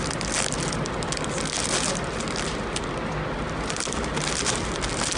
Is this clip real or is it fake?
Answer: real